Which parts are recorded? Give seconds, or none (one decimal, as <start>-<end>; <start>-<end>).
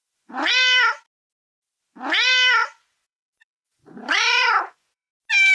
0.5-2.6; 5.1-5.5